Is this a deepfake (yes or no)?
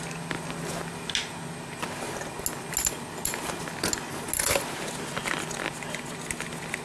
no